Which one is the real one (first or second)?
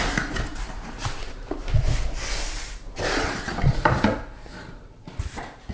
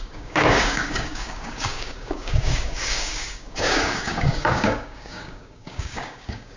first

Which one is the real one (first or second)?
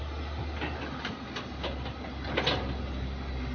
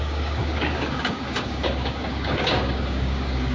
first